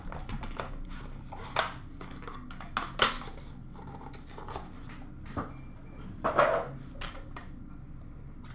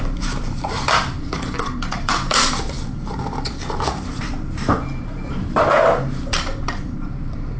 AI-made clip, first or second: second